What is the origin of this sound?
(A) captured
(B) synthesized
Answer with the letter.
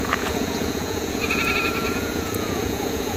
B